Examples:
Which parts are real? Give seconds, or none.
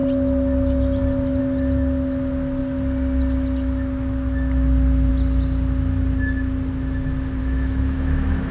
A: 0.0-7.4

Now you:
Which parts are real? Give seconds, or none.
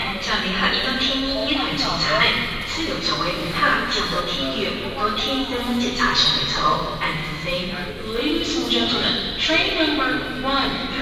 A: 0.0-3.4; 4.2-7.2; 7.9-11.0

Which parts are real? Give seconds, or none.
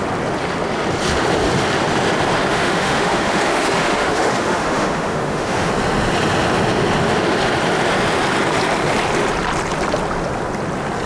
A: 0.0-2.5; 5.7-11.1